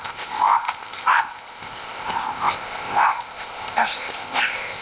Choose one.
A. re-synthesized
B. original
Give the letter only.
A